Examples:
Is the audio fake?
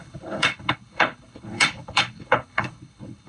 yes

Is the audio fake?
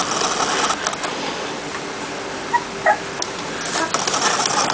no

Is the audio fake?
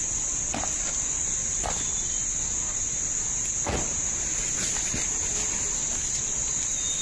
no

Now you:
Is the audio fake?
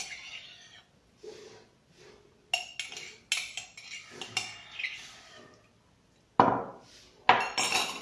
no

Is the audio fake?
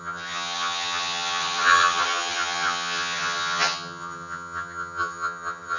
yes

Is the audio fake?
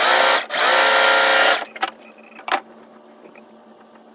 no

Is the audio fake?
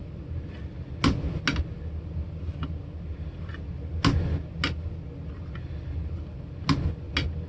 no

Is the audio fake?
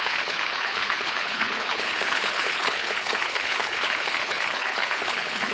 yes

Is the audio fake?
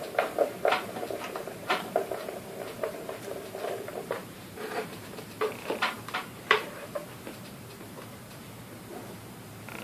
yes